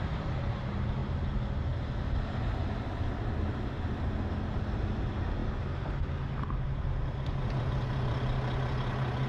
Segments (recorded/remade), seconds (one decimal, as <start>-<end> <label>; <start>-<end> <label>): 0.0-9.3 recorded